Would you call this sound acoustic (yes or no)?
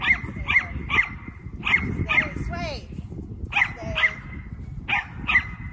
yes